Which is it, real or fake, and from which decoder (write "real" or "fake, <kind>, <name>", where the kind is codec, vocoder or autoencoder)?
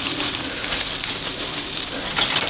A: real